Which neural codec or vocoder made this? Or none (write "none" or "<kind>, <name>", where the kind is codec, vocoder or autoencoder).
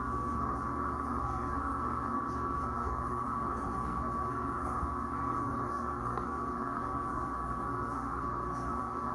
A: codec, SNAC